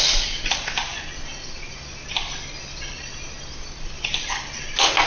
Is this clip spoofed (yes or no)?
no